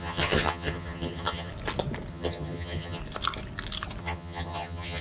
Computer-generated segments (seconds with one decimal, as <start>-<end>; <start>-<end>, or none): 0.0-1.5; 2.1-3.0; 4.0-5.0

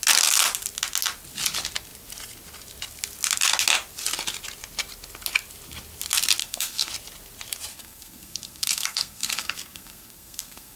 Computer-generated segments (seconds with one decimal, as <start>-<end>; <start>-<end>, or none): 6.4-6.9; 7.7-10.8

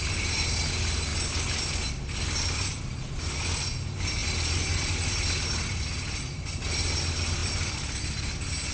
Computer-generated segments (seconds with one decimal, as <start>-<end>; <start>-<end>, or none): none

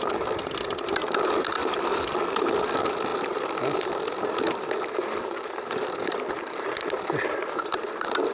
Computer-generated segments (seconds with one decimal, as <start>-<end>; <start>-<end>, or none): none

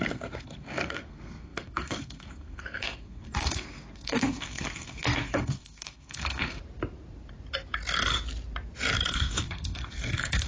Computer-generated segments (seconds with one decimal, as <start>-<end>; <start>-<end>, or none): 0.0-6.6; 9.1-10.5

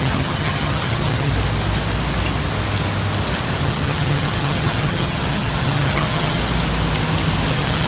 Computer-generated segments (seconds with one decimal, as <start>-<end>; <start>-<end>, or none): 0.0-1.3; 3.6-6.4; 7.5-7.9